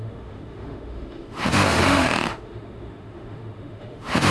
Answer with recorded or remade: remade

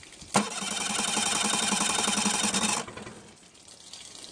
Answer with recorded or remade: recorded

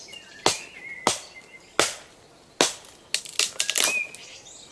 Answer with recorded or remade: recorded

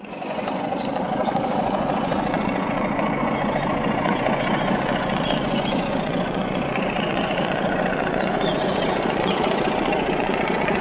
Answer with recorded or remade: remade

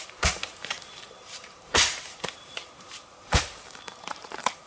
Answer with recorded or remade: remade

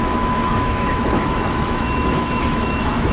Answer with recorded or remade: remade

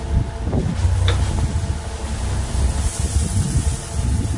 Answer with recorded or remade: recorded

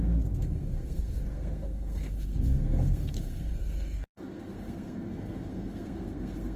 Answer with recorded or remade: remade